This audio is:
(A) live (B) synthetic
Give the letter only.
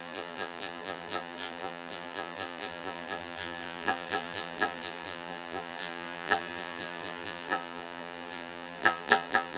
B